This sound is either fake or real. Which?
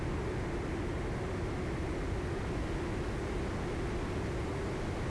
real